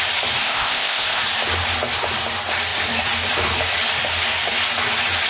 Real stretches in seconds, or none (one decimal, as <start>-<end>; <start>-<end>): 0.0-0.4; 1.2-5.3